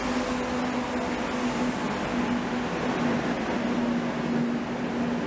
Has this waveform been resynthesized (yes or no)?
no